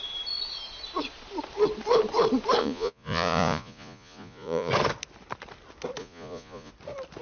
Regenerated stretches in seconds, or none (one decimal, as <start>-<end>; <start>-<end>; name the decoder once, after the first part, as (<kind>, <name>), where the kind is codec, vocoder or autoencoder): 2.6-4.7 (vocoder, Vocos); 6.0-6.7